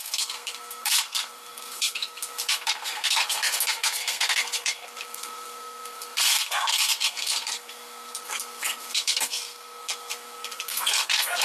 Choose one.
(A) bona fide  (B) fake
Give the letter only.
B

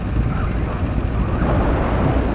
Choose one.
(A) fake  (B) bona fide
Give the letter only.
B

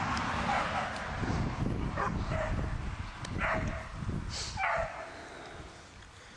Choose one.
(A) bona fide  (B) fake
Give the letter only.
A